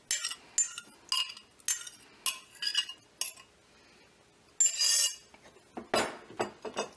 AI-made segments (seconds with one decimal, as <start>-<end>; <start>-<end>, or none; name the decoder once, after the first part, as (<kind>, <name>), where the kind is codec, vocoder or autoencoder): none